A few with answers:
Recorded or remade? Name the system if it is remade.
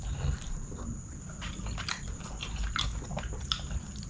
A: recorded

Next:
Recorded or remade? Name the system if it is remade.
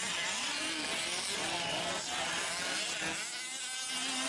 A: recorded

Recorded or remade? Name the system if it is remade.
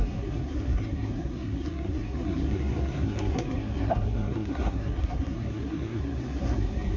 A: remade, codec, SNAC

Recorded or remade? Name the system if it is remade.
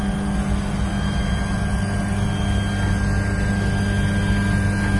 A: recorded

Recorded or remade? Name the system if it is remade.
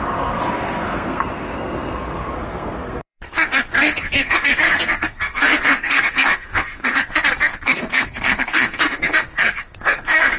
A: remade, codec, SNAC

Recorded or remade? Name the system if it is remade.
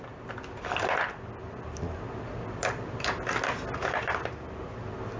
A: recorded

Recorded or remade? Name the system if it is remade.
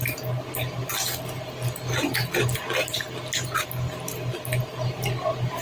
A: recorded